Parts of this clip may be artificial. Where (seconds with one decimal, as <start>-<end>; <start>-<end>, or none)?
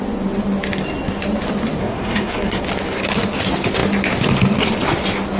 1.8-2.6